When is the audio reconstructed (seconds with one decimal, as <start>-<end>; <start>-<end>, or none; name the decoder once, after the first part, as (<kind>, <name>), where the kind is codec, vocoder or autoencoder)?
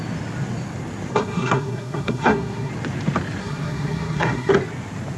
1.1-2.7 (codec, SNAC); 3.4-4.5